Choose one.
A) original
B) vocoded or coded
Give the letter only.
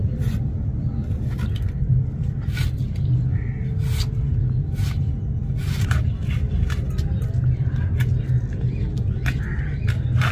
A